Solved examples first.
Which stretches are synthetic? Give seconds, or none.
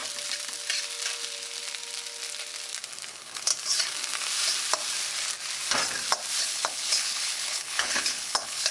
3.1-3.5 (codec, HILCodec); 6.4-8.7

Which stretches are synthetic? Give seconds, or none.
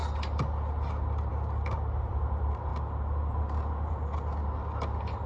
none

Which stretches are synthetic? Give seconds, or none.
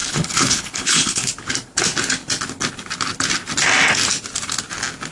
0.0-1.3 (codec, HILCodec)